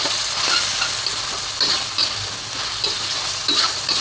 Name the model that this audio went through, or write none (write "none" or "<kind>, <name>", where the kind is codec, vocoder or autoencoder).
none